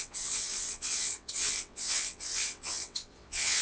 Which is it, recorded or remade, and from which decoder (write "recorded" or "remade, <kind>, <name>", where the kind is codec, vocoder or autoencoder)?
remade, vocoder, WaveNeXt